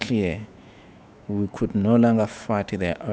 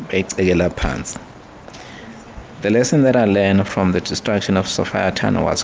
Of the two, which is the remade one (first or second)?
first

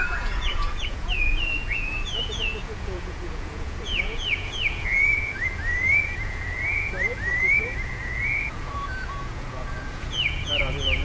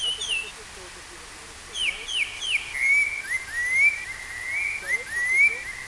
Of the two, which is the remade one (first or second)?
first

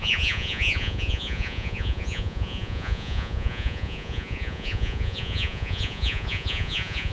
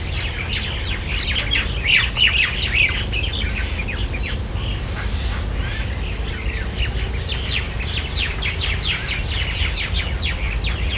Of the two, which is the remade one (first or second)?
first